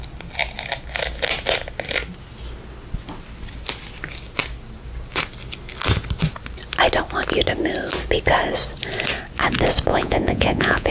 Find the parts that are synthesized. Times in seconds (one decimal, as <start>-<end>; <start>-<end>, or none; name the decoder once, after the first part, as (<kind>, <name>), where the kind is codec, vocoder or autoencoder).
9.9-10.9 (vocoder, Vocos)